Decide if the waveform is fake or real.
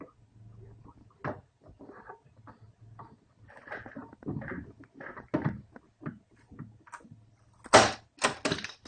real